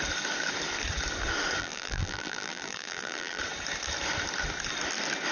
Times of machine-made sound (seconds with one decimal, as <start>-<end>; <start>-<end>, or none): 1.6-3.4